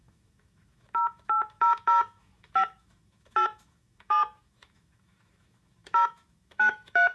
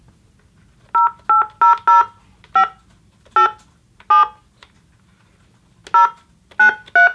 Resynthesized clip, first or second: first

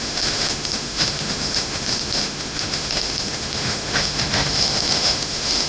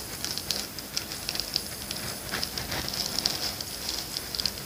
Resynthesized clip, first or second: first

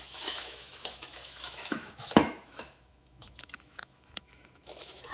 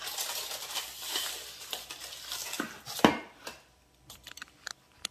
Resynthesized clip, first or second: first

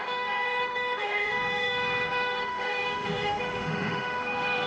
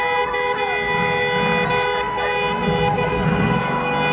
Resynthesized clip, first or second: first